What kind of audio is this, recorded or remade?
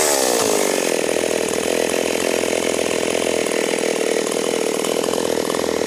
recorded